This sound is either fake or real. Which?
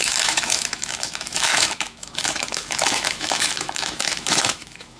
fake